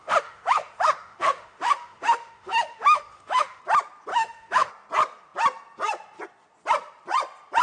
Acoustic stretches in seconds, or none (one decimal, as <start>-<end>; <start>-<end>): 3.6-4.1; 4.7-7.6